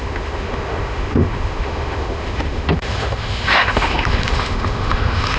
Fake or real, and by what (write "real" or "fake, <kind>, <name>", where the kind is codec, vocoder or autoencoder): fake, autoencoder, DAC-VAE